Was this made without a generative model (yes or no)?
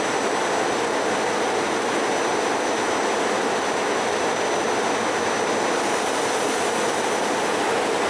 yes